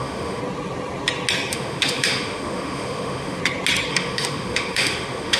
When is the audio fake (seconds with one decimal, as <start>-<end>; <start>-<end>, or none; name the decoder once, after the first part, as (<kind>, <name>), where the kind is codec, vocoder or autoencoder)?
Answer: 0.0-0.4 (autoencoder, DAC-VAE); 1.5-3.4; 3.9-5.4